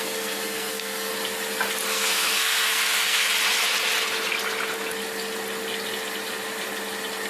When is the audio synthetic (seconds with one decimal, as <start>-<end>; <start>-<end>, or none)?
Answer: 0.0-1.1; 1.9-3.3